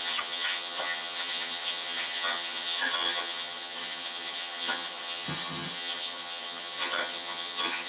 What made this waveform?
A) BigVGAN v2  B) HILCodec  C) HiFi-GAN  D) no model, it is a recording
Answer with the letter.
C